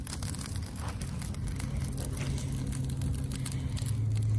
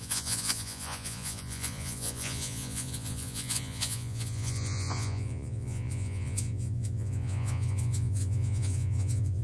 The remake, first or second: second